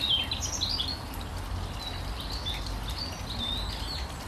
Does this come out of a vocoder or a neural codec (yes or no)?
no